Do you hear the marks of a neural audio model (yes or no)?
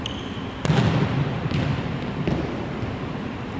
no